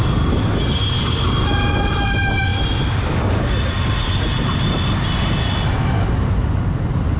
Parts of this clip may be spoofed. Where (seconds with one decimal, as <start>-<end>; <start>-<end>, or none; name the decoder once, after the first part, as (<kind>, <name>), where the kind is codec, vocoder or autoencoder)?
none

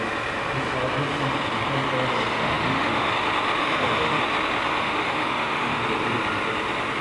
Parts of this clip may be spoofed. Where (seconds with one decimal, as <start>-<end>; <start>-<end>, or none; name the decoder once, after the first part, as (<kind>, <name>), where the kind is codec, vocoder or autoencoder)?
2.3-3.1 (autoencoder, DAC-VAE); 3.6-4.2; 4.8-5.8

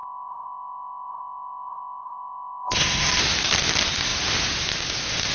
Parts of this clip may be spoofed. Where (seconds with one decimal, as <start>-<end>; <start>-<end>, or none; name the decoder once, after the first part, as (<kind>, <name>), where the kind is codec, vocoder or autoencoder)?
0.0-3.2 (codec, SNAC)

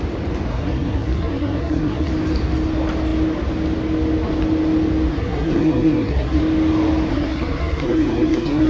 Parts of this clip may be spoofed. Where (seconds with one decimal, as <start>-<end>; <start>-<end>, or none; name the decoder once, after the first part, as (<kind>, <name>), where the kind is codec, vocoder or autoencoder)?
0.5-2.1 (codec, SNAC); 5.1-6.4; 7.1-8.7